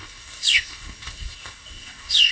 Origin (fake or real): fake